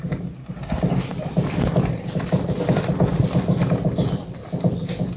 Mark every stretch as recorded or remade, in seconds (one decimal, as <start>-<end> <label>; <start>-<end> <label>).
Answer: 0.0-5.2 recorded